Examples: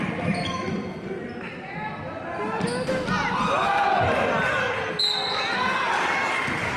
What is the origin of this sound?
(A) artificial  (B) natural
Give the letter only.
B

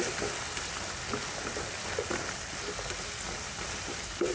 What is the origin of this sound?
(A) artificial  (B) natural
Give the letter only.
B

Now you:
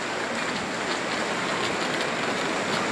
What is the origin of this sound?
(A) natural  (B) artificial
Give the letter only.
A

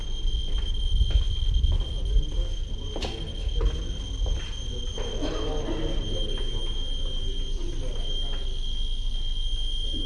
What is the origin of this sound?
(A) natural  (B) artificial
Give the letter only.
A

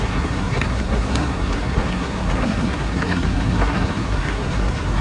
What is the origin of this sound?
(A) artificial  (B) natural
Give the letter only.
A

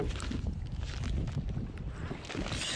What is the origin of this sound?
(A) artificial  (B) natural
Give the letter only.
B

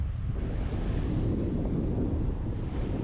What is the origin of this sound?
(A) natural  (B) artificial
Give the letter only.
A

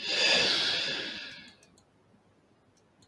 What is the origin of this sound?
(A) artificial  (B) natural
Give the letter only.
B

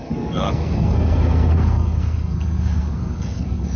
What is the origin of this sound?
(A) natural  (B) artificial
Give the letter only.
B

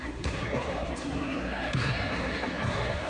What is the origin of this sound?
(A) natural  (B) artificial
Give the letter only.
B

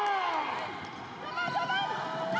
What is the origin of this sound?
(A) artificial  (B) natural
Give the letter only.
B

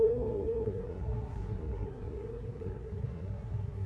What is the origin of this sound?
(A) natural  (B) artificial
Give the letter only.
B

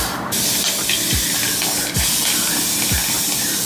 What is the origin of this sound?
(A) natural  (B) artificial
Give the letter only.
A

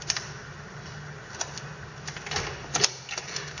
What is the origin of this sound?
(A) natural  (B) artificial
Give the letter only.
A